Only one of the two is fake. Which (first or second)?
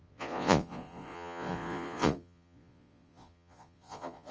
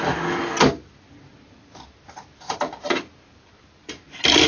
first